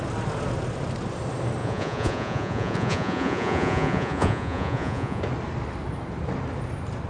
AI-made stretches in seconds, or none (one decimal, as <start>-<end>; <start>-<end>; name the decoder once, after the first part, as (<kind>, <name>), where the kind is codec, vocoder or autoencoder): 1.6-5.2 (vocoder, Vocos)